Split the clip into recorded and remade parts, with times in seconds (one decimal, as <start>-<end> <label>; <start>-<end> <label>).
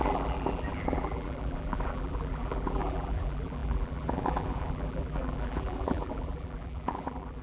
0.0-7.4 remade